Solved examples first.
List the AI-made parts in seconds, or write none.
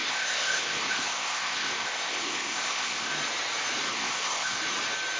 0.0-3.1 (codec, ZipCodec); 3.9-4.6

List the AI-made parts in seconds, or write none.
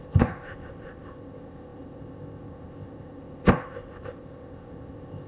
0.0-5.3 (codec, ZipCodec)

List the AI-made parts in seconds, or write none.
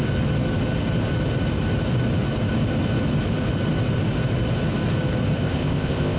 5.4-6.2 (codec, ZipCodec)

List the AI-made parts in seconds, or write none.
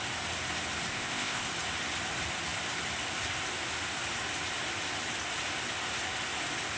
0.9-1.5 (codec, ZipCodec)